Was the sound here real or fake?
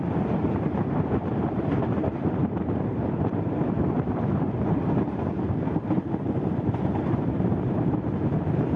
fake